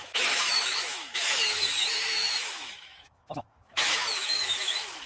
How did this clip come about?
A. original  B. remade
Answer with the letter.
B